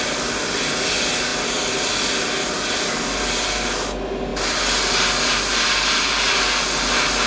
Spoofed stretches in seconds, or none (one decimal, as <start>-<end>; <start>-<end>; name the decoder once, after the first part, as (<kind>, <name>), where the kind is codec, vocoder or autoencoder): 1.3-2.9 (vocoder, BigVGAN v2)